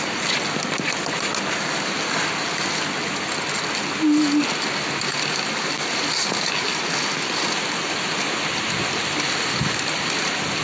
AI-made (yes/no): no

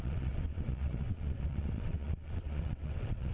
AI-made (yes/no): yes